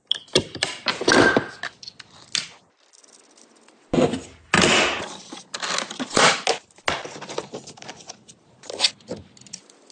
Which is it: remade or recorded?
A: recorded